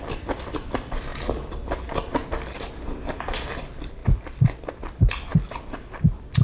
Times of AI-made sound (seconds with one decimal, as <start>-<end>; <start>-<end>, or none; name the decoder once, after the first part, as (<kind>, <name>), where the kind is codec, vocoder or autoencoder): 0.0-1.1 (vocoder, BigVGAN v2); 2.7-4.0; 4.7-6.4